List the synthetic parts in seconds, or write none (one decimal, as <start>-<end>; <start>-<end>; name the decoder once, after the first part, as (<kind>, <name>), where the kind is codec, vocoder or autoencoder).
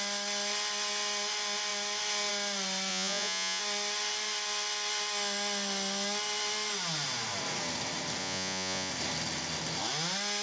2.9-3.6 (vocoder, Vocos); 8.2-8.9